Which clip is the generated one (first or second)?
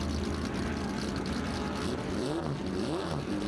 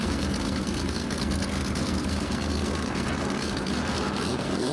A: second